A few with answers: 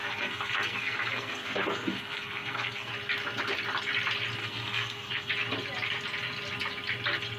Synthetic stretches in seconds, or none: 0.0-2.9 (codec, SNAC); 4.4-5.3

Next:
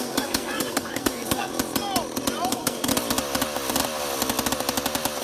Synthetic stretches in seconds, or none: 0.0-1.5 (codec, SNAC); 2.5-2.9

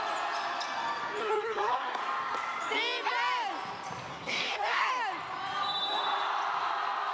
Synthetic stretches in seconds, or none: 1.2-2.0 (codec, SNAC); 4.1-4.9

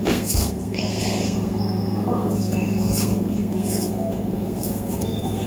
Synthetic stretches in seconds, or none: 0.0-5.5 (codec, SNAC)

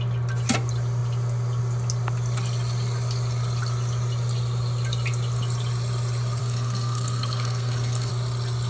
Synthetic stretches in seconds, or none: 6.4-8.1 (codec, SNAC)

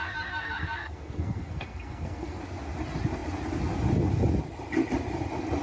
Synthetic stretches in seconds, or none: 0.0-2.4 (codec, SNAC)

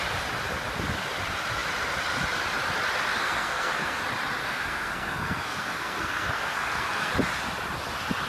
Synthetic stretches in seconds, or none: 3.1-4.0 (codec, SNAC); 4.4-7.1